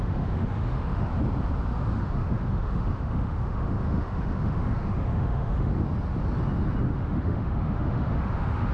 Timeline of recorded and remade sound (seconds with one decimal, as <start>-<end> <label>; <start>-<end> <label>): 0.0-1.1 remade; 1.1-2.0 recorded; 2.0-5.7 remade; 5.7-6.9 recorded; 6.9-8.7 remade